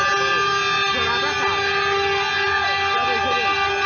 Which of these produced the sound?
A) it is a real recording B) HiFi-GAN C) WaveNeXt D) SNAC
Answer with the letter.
A